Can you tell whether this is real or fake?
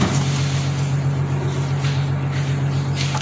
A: real